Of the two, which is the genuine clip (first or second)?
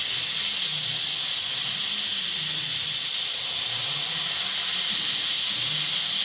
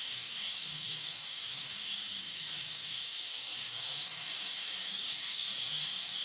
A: first